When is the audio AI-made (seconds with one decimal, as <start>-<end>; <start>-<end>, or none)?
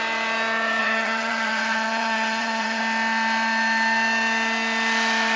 0.8-2.8